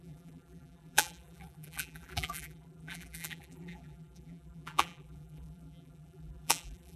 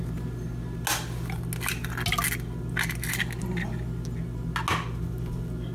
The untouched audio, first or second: second